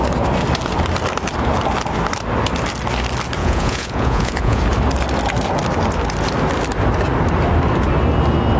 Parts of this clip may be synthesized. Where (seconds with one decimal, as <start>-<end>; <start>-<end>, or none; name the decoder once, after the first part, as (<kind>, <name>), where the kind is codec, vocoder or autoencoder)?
3.4-4.6 (vocoder, Vocos)